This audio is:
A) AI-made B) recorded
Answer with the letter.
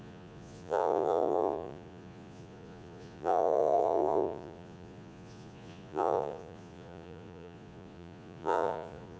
A